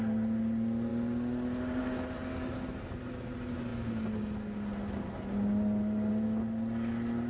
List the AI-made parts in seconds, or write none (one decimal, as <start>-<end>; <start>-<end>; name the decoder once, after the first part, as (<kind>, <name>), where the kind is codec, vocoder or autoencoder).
none